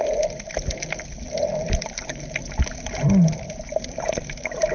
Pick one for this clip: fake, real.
real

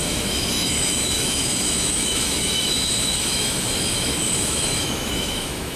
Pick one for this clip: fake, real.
fake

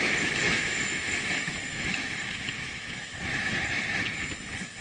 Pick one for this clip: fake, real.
fake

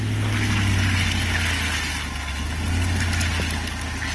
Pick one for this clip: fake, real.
real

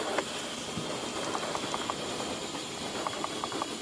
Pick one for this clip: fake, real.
real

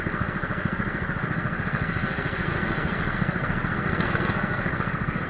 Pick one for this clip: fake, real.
fake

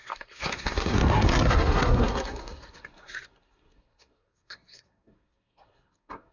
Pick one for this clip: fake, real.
fake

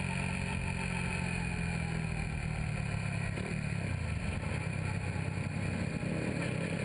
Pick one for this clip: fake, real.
real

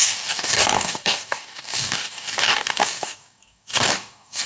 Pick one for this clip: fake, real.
fake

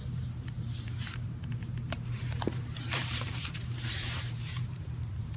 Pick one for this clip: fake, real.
fake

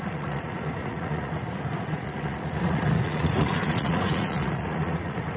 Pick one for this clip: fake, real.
fake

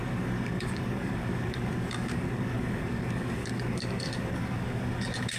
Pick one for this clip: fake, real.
fake